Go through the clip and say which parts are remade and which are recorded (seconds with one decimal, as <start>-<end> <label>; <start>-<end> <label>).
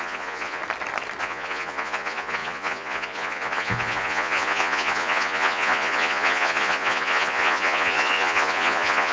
0.0-0.6 remade; 0.6-1.2 recorded; 1.2-9.1 remade